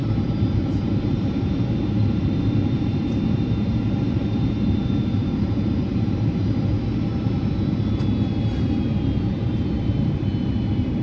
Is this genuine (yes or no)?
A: no